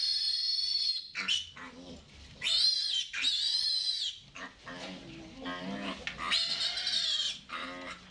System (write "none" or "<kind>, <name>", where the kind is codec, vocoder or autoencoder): none